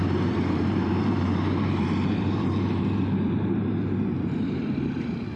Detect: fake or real fake